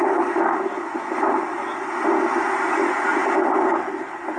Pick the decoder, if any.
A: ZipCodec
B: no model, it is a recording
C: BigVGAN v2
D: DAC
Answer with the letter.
B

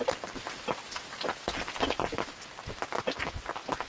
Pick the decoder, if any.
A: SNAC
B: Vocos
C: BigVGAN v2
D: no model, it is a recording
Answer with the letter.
D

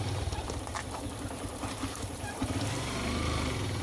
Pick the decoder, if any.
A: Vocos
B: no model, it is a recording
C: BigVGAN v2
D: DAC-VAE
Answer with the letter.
C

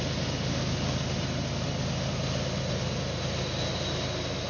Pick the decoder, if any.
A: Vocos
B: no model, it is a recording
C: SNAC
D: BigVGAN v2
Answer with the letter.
B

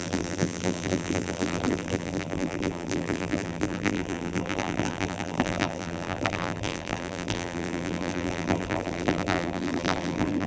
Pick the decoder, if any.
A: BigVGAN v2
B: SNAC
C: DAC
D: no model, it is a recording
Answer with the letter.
A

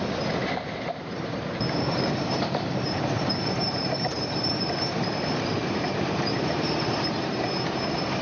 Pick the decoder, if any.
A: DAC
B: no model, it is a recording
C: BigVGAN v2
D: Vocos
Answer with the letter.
C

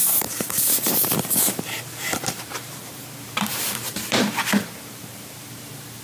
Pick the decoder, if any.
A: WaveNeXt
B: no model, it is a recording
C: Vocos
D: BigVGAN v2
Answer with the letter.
D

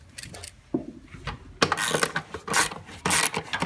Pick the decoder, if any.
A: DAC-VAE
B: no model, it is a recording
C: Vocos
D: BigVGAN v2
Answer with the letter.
B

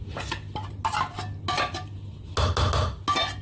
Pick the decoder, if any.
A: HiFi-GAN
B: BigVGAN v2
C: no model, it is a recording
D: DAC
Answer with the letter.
C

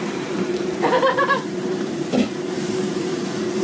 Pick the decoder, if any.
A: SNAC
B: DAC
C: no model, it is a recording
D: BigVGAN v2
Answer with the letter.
D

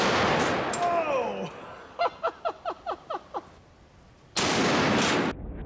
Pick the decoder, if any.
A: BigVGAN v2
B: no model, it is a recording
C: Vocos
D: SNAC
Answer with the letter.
B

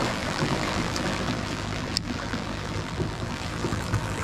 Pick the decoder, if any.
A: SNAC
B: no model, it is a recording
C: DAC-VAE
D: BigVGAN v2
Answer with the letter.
D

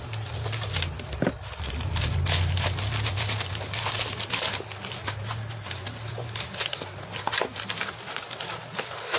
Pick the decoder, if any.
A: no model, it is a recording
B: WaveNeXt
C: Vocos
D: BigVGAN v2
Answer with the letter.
A